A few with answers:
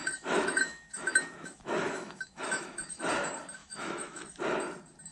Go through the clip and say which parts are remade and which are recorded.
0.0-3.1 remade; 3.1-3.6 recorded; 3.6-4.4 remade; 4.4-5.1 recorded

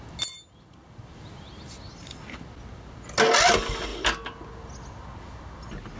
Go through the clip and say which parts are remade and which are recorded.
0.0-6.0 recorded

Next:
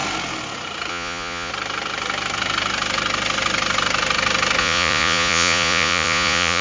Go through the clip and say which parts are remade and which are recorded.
0.0-0.9 recorded; 0.9-1.5 remade; 1.5-4.6 recorded; 4.6-6.6 remade

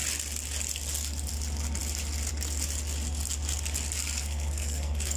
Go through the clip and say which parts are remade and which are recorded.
0.0-4.2 recorded; 4.2-5.2 remade

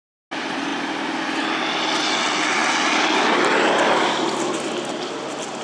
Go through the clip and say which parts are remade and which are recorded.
0.0-5.6 recorded